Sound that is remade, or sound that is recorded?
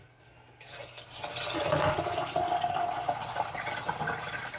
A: recorded